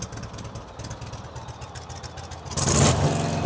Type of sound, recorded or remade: recorded